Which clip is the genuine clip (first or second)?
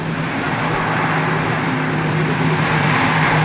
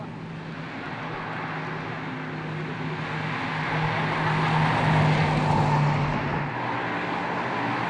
second